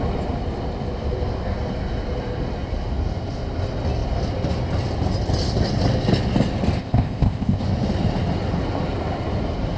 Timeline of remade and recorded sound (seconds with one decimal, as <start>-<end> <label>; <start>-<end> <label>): 0.0-6.8 recorded; 6.8-7.6 remade; 7.6-9.8 recorded